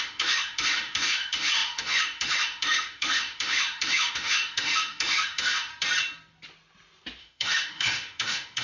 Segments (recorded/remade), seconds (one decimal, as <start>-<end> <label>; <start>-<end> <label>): 0.0-5.7 remade; 5.7-7.2 recorded; 7.2-8.6 remade

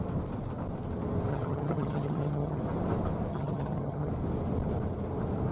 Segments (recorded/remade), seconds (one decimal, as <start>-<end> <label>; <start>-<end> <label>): 0.0-1.3 recorded; 1.3-2.6 remade; 2.6-3.3 recorded; 3.3-4.1 remade; 4.1-5.5 recorded

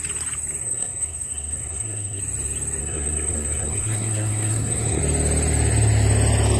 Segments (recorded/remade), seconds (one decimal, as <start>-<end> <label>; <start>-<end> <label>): 0.0-0.6 recorded; 0.6-2.2 remade; 2.2-2.8 recorded; 2.8-5.0 remade; 5.0-6.6 recorded

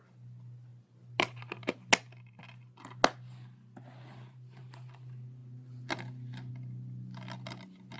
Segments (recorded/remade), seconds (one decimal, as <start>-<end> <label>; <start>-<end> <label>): 0.0-8.0 recorded

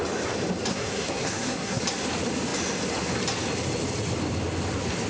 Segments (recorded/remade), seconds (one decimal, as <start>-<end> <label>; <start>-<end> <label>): 0.0-0.7 recorded; 0.7-1.8 remade; 1.8-5.1 recorded

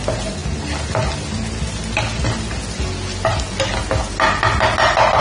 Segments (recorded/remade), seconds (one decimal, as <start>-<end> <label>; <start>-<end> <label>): 0.0-5.2 recorded

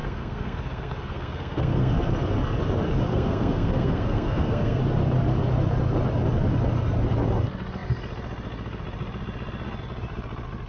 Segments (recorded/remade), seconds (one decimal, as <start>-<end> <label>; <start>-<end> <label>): 0.0-1.9 remade; 1.9-3.1 recorded; 3.1-4.8 remade; 4.8-10.7 recorded

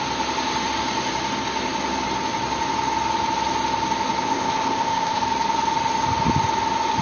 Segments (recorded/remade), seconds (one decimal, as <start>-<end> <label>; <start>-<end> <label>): 0.0-4.2 recorded; 4.2-5.2 remade; 5.2-7.0 recorded